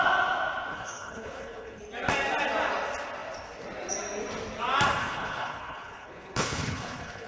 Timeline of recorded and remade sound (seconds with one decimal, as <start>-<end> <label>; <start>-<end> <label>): 0.0-0.7 recorded; 0.7-1.8 remade; 1.8-5.0 recorded; 5.0-7.3 remade